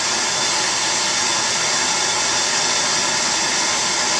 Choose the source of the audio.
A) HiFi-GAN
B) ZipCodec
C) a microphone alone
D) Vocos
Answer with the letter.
C